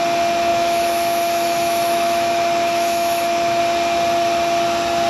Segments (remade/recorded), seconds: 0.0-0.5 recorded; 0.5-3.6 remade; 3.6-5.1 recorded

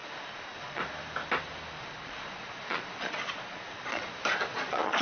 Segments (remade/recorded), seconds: 0.0-0.8 remade; 0.8-1.8 recorded; 1.8-4.1 remade; 4.1-4.5 recorded; 4.5-5.0 remade